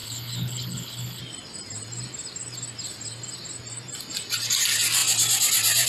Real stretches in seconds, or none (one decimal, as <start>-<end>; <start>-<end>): 1.2-5.9